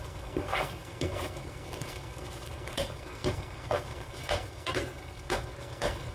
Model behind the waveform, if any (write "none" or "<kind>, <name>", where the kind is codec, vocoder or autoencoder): codec, SNAC